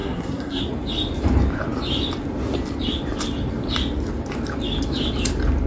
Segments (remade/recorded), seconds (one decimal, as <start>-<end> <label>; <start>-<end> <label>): 0.0-0.6 remade; 0.6-5.7 recorded